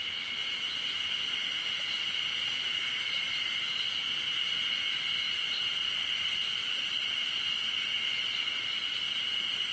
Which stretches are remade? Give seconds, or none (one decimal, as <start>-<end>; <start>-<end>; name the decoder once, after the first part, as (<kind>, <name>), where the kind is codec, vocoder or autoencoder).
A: none